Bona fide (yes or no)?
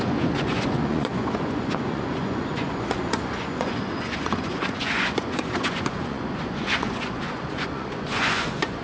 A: no